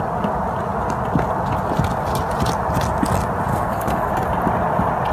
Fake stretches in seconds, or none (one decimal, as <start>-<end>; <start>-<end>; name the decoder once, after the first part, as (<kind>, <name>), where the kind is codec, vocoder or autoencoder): 3.5-4.1 (codec, SNAC)

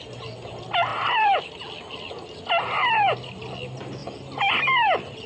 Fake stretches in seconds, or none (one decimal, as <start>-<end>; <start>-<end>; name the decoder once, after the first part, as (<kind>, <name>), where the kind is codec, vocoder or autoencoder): none

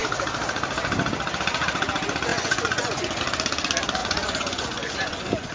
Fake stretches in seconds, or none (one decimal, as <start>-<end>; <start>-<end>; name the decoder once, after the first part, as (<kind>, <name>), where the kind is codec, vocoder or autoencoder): 2.3-3.2 (vocoder, Vocos); 4.0-5.5

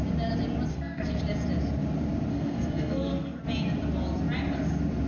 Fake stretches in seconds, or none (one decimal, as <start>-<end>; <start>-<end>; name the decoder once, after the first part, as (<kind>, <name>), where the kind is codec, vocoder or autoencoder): 0.7-1.2 (codec, SNAC); 2.3-3.4

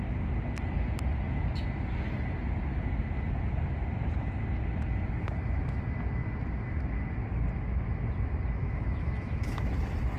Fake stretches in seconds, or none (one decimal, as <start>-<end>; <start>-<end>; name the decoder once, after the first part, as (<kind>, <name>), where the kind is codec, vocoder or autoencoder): 8.6-9.6 (autoencoder, DAC-VAE)

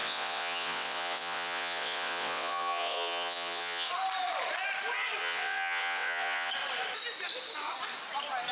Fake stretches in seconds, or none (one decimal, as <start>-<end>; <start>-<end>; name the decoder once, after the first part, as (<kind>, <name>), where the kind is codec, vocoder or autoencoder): 0.0-3.9 (vocoder, WaveNeXt); 5.2-6.5